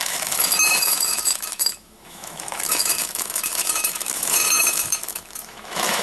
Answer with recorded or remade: remade